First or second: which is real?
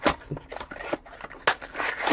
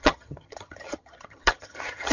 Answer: first